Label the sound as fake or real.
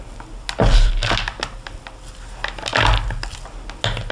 real